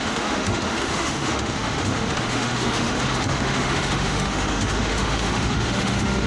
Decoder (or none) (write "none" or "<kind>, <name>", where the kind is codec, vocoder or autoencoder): autoencoder, DAC-VAE